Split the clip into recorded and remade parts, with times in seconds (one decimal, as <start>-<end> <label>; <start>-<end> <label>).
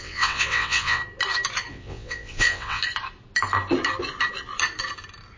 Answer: 0.0-1.0 remade; 1.0-1.7 recorded; 1.7-2.8 remade; 2.8-5.4 recorded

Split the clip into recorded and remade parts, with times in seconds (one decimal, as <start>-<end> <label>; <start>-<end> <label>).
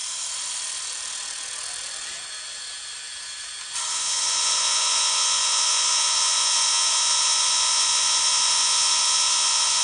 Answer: 0.0-3.9 recorded; 3.9-9.8 remade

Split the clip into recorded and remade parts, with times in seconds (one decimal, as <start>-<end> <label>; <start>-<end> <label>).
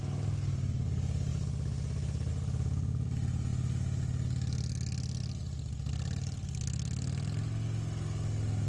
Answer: 0.0-8.7 recorded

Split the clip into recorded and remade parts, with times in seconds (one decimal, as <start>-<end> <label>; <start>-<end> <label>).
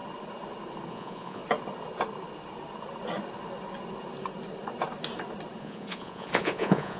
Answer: 0.0-0.9 recorded; 0.9-1.4 remade; 1.4-5.6 recorded; 5.6-7.0 remade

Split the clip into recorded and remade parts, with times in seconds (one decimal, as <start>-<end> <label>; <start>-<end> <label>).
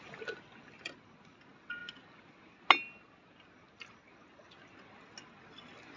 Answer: 0.0-6.0 recorded